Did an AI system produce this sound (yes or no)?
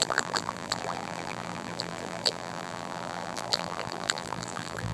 yes